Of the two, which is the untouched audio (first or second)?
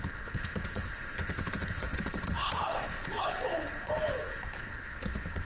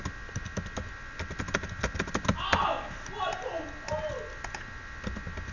second